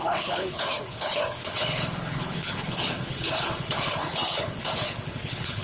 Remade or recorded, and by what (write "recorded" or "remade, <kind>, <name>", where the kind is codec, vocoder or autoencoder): remade, codec, HILCodec